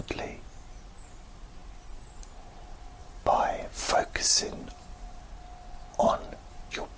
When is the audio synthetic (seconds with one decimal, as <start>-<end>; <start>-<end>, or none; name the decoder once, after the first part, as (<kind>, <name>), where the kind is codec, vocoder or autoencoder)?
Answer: 3.0-5.3 (vocoder, BigVGAN v2)